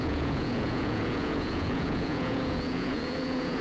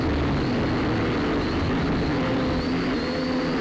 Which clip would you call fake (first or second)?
first